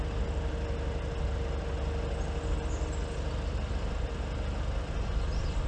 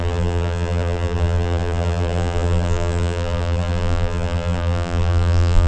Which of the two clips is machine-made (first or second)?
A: second